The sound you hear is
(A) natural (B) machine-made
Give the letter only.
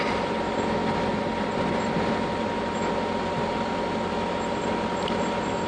A